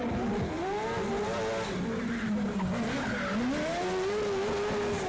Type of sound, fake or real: real